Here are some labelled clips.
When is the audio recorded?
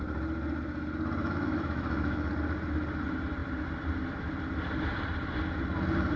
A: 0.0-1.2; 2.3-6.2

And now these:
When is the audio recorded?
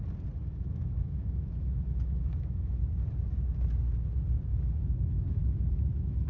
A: 0.0-0.4; 2.8-4.5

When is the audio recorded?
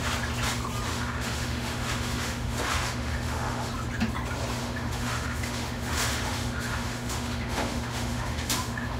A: 0.0-0.9; 3.7-4.6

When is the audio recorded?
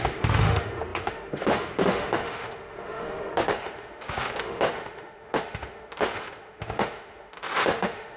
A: none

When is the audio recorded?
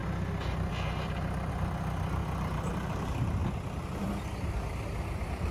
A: 0.0-5.5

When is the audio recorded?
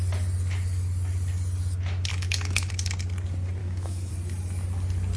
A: 0.0-2.1; 2.7-3.6; 4.1-5.2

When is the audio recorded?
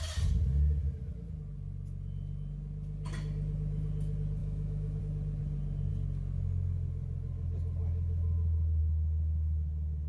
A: 0.0-4.4; 5.0-10.1